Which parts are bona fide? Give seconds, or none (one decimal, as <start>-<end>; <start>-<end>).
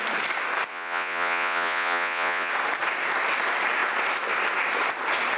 0.0-0.7; 2.5-5.4